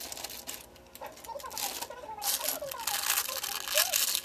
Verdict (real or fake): real